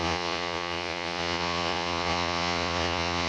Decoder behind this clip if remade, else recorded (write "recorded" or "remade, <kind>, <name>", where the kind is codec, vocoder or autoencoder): remade, vocoder, Vocos